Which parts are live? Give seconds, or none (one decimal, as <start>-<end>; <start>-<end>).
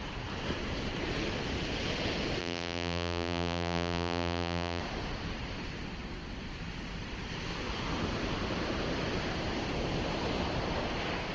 0.0-2.4; 4.8-11.3